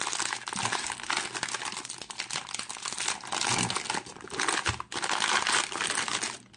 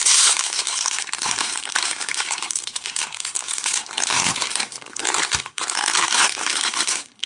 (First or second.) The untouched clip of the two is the first